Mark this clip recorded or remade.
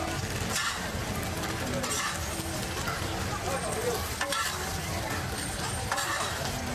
recorded